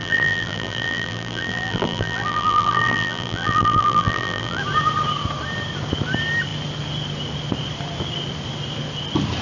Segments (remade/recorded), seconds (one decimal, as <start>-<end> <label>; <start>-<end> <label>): 0.0-4.6 remade; 4.6-9.4 recorded